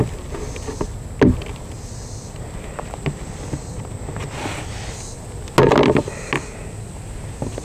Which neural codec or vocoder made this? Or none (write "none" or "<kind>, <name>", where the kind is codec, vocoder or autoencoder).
none